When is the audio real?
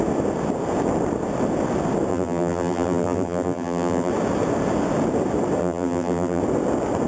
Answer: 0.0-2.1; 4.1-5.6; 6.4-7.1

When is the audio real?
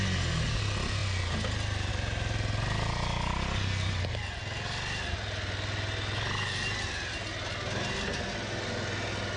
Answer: 0.0-9.4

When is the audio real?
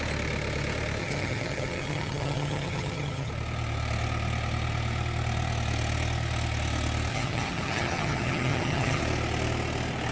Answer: 0.0-1.0; 3.3-7.1; 9.0-10.1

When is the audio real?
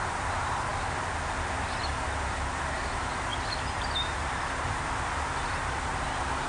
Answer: 0.0-6.5